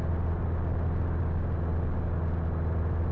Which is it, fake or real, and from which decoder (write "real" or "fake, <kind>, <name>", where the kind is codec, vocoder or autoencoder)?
real